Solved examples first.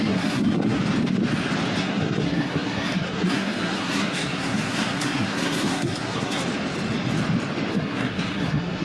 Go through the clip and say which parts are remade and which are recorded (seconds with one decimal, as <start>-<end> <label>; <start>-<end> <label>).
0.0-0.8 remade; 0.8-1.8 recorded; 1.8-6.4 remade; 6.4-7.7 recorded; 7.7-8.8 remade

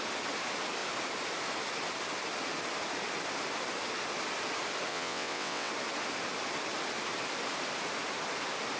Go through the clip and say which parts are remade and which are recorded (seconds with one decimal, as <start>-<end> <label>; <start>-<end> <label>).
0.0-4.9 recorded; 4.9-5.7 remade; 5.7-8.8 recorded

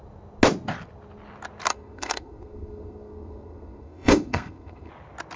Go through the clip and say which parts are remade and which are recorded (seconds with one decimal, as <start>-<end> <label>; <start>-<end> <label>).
0.0-1.7 recorded; 1.7-4.9 remade; 4.9-5.4 recorded